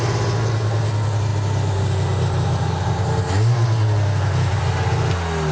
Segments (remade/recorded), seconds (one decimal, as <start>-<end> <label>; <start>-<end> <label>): 0.0-5.5 recorded